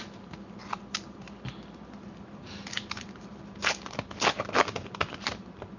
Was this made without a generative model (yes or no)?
yes